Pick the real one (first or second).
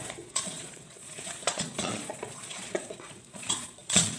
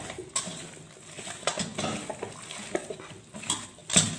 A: second